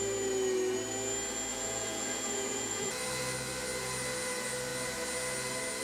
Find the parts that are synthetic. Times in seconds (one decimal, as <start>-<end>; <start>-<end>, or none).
1.5-2.9